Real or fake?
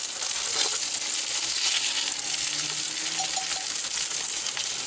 real